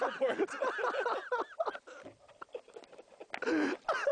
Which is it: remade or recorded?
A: recorded